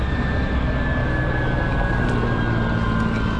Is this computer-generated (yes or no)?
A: no